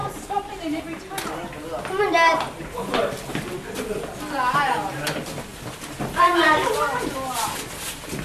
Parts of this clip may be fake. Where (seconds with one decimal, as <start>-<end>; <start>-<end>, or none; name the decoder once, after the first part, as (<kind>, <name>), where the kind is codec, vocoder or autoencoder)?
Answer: 0.0-0.8 (vocoder, BigVGAN v2)

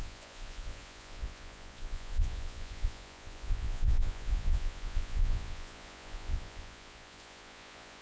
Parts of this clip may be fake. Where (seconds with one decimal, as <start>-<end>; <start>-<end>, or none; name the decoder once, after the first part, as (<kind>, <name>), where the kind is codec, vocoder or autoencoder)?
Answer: 0.0-8.0 (vocoder, Vocos)